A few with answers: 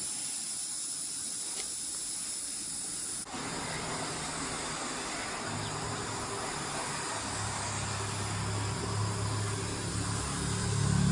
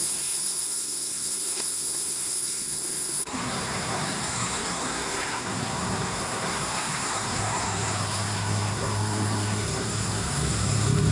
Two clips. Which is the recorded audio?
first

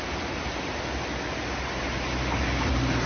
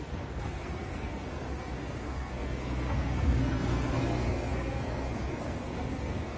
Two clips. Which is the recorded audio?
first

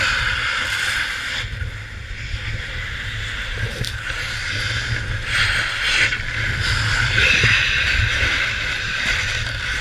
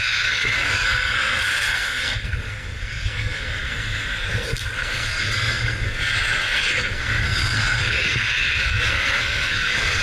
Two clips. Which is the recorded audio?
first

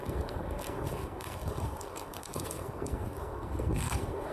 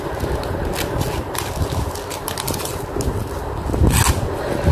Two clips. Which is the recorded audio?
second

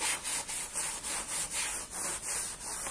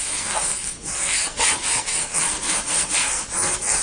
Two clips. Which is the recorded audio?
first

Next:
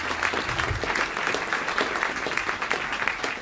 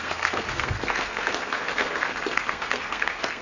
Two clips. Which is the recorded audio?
first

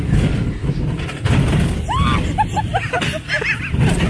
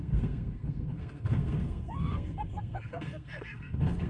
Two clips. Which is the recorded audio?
first